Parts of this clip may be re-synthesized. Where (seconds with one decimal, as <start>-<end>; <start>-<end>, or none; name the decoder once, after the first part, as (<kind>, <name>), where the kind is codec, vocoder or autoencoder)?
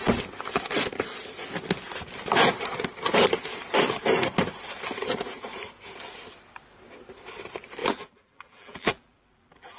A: 7.8-9.8 (vocoder, BigVGAN v2)